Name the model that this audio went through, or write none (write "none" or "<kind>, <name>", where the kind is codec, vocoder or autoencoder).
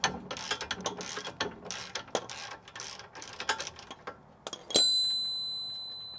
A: none